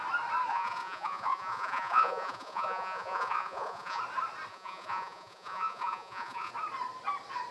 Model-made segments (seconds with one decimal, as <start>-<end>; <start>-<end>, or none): 0.5-4.0; 4.5-6.5